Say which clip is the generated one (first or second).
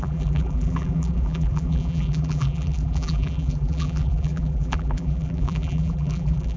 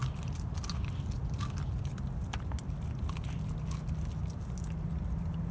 first